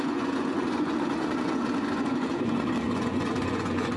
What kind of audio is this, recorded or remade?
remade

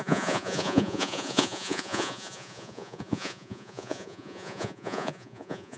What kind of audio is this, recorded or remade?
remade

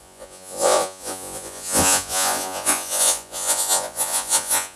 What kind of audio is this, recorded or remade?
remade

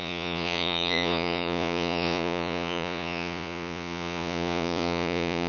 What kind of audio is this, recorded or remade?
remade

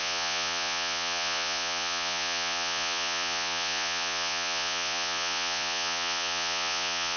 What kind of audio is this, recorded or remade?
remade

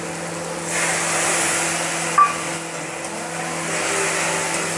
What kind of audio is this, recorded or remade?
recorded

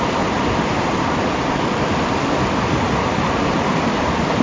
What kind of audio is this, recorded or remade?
recorded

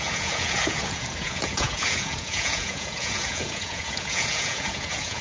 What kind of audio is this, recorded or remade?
remade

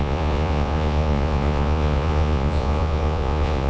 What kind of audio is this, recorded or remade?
remade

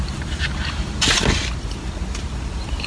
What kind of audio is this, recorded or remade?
recorded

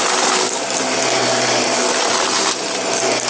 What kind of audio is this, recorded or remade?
recorded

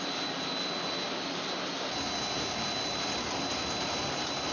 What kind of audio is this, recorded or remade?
recorded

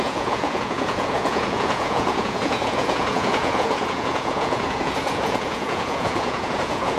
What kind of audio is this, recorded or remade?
remade